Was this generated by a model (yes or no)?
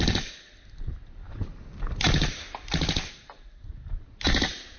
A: no